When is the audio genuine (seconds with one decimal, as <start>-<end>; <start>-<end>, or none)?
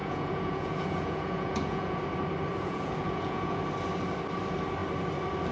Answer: 2.0-2.5; 3.6-5.5